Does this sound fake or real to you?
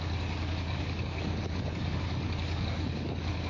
fake